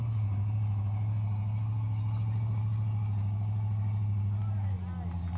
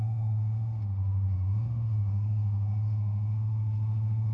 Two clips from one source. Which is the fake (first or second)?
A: second